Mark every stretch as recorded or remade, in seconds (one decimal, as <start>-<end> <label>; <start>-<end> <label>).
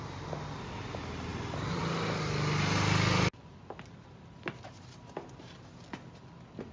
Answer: 0.0-6.7 recorded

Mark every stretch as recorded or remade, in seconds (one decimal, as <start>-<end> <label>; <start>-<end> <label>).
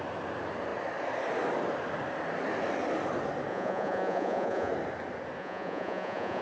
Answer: 0.0-3.5 recorded; 3.5-4.7 remade; 4.7-5.4 recorded; 5.4-6.4 remade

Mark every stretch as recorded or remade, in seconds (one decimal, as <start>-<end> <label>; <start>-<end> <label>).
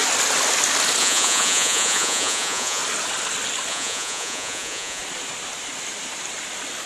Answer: 0.0-1.0 recorded; 1.0-2.8 remade; 2.8-3.7 recorded; 3.7-5.0 remade; 5.0-6.9 recorded